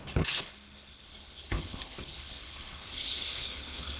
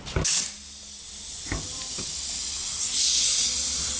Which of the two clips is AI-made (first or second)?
first